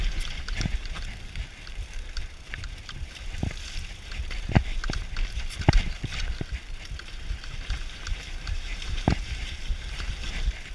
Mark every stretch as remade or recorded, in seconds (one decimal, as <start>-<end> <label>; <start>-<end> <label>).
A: 0.0-3.1 remade; 3.1-8.7 recorded; 8.7-10.1 remade; 10.1-10.7 recorded